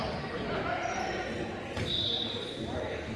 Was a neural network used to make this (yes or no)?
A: yes